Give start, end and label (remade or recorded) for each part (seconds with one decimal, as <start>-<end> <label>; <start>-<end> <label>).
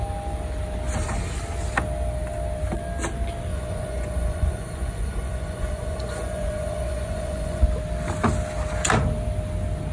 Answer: 0.0-3.5 recorded; 3.5-7.6 remade; 7.6-9.9 recorded